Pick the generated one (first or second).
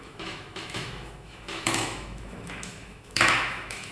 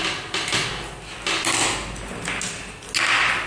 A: first